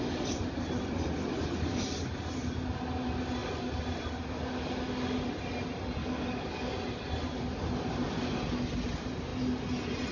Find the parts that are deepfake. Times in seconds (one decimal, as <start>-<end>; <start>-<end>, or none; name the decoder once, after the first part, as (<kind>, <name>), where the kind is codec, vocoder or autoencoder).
6.0-6.7 (codec, DAC)